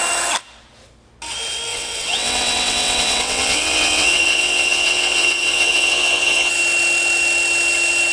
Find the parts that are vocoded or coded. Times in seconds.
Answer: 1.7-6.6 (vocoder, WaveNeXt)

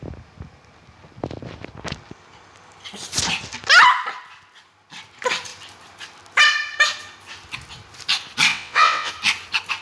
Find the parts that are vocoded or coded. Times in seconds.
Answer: 8.5-9.1 (vocoder, WaveNeXt)

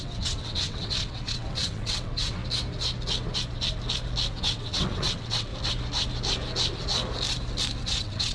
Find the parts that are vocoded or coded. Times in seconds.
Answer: 0.0-2.4 (vocoder, WaveNeXt); 4.3-5.5; 7.8-8.3

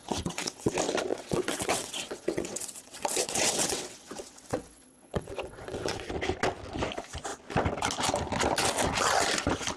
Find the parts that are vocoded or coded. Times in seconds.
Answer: 0.0-0.7 (vocoder, WaveNeXt); 1.1-6.1

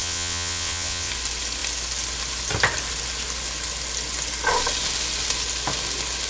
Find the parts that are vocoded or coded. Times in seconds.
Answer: 0.0-1.1 (vocoder, WaveNeXt)